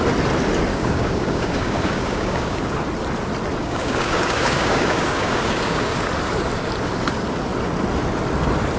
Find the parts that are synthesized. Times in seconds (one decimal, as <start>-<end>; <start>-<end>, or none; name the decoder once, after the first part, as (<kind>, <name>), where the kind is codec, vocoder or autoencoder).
0.7-2.6 (codec, DAC); 3.6-6.1